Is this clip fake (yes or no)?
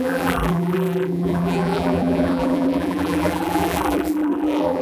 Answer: yes